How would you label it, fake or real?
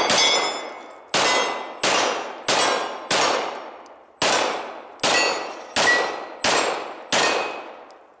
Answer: real